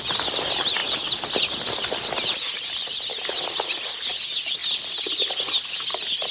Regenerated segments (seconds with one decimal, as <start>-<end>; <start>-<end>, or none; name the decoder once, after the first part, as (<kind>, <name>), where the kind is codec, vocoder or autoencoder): none